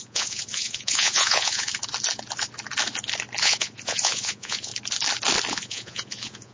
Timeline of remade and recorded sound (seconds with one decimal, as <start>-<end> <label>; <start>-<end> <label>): 0.0-1.7 remade; 1.7-3.4 recorded; 3.4-4.7 remade; 4.7-5.5 recorded; 5.5-6.5 remade